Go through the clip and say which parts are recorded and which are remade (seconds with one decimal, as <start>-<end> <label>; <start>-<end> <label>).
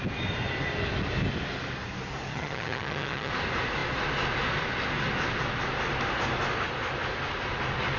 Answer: 0.0-2.3 recorded; 2.3-3.3 remade; 3.3-8.0 recorded